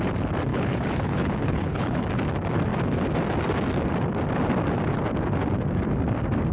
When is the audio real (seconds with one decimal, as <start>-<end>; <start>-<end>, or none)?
0.0-0.5; 2.0-6.5